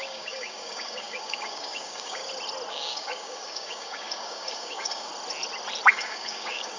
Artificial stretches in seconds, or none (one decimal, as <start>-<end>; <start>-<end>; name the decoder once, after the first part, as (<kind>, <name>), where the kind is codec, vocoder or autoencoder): 0.0-2.2 (codec, DAC); 2.7-5.1; 5.9-6.8